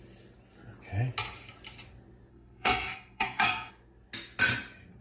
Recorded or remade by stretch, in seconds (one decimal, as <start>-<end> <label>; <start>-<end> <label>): 0.0-2.3 recorded; 2.3-3.7 remade; 3.7-5.0 recorded